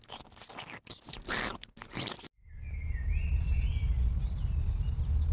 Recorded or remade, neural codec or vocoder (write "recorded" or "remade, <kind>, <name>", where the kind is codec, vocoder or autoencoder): recorded